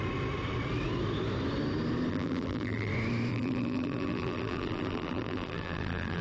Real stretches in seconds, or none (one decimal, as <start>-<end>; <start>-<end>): 0.0-2.1; 2.9-3.3